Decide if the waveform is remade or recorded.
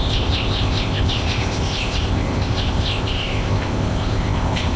remade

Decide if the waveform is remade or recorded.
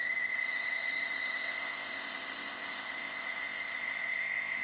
remade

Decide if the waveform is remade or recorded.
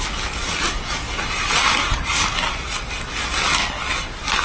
recorded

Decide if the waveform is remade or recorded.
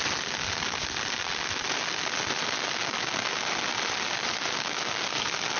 recorded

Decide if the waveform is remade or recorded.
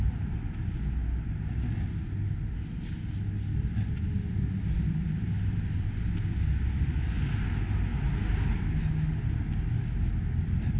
recorded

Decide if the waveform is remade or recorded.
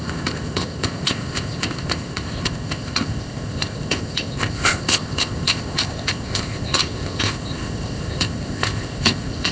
remade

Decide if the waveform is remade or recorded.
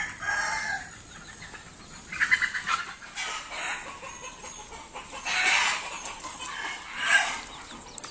recorded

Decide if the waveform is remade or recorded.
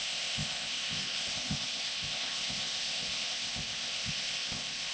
remade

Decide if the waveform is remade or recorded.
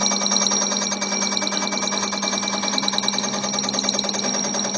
recorded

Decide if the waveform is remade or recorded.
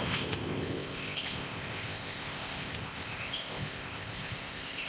remade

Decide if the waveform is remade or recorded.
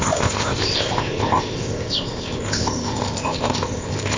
remade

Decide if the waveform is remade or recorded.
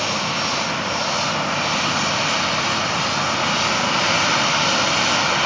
recorded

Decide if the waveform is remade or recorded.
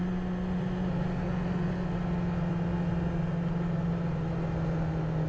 recorded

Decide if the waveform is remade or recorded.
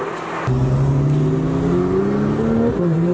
recorded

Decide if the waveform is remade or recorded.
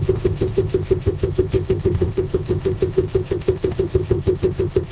remade